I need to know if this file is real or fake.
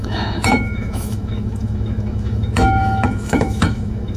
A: fake